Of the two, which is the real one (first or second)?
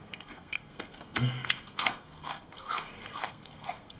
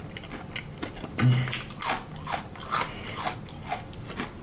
second